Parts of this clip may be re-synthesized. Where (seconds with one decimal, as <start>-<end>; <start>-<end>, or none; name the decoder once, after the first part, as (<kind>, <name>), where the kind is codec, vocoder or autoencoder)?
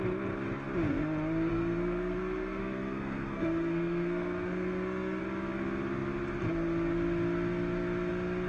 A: 1.5-5.2 (codec, SNAC)